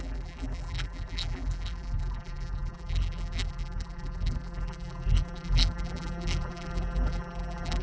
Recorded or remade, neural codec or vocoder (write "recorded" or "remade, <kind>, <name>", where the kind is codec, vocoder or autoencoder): remade, vocoder, BigVGAN v2